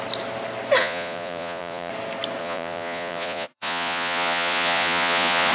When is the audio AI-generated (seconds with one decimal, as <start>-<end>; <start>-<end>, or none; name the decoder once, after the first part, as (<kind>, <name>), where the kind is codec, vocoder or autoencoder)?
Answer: 0.8-1.9 (vocoder, Vocos); 2.4-5.5